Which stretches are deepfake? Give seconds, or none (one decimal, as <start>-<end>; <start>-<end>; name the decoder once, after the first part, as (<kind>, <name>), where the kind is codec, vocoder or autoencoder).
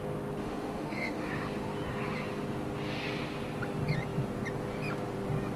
0.4-1.3 (autoencoder, DAC-VAE)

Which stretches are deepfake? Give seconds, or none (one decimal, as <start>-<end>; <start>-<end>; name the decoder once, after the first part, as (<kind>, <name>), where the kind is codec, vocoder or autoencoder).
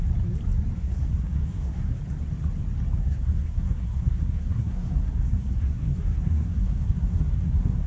0.8-2.0 (codec, SNAC); 3.0-7.9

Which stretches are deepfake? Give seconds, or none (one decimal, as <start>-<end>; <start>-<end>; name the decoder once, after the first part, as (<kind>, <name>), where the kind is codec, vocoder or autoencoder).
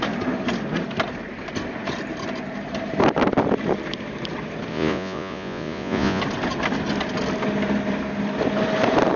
4.7-6.2 (vocoder, Vocos)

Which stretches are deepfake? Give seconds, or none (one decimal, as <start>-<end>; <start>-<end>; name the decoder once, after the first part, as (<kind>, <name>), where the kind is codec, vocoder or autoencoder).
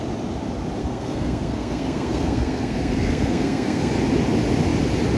0.8-3.9 (codec, SNAC)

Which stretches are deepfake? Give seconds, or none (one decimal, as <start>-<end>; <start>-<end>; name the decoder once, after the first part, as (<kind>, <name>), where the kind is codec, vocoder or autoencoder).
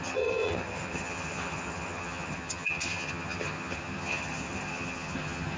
0.0-5.6 (vocoder, HiFi-GAN)